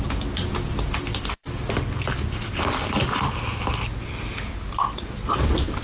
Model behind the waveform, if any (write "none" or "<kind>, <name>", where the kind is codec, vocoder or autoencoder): none